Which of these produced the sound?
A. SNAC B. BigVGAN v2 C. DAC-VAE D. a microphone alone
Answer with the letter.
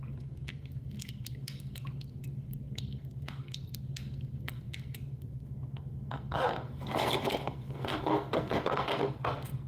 A